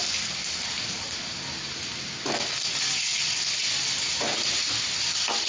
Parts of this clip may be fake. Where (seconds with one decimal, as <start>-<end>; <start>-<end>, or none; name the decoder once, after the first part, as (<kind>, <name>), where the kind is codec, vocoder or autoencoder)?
none